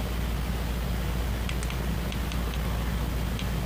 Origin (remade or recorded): recorded